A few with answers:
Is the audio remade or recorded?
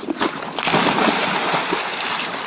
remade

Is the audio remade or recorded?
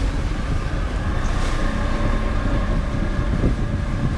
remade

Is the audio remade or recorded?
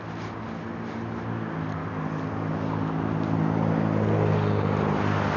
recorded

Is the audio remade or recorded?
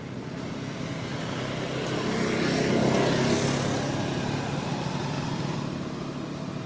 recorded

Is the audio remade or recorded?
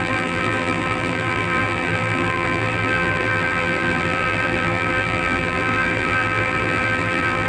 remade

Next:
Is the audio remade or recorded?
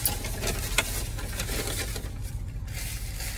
recorded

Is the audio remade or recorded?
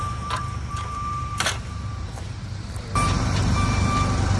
remade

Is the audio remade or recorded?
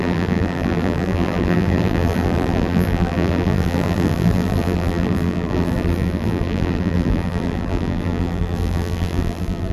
remade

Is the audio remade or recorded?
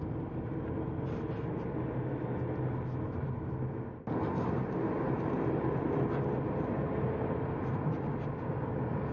recorded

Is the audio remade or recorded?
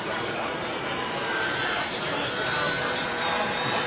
remade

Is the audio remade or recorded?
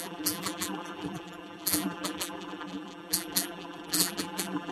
remade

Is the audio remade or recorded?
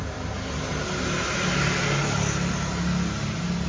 recorded